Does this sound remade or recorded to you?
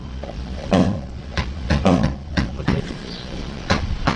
remade